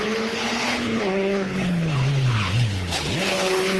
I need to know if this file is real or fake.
fake